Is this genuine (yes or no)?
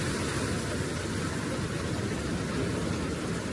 yes